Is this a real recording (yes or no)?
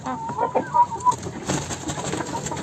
yes